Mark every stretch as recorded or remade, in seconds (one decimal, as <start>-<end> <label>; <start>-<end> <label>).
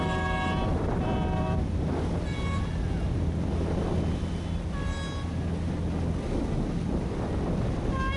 0.0-0.6 recorded; 0.6-2.0 remade; 2.0-8.2 recorded